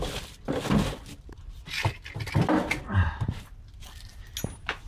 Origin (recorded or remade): recorded